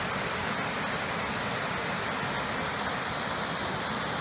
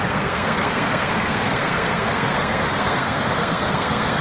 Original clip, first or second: first